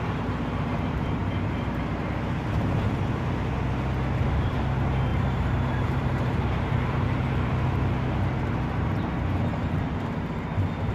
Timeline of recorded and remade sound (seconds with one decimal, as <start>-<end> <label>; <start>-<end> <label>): 0.0-5.1 recorded; 5.1-7.5 remade; 7.5-10.9 recorded